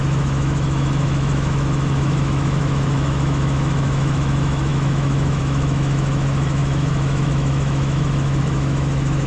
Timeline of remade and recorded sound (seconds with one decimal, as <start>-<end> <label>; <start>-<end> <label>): 0.0-9.3 remade

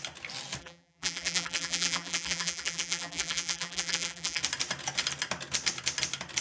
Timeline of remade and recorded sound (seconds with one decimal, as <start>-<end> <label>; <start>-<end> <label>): 0.0-0.6 recorded; 0.6-4.4 remade; 4.4-6.4 recorded

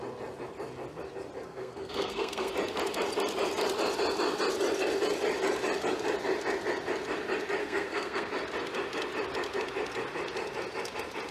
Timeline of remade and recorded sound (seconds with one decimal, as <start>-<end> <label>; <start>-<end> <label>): 0.0-1.5 recorded; 1.5-2.5 remade; 2.5-7.6 recorded; 7.6-8.3 remade; 8.3-11.3 recorded

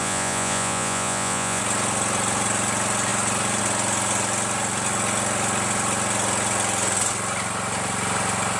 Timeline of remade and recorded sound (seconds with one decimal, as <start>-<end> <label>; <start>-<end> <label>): 0.0-1.6 remade; 1.6-8.6 recorded

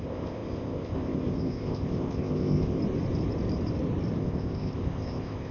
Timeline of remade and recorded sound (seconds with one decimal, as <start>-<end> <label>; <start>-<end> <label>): 0.0-2.8 remade; 2.8-4.2 recorded; 4.2-5.5 remade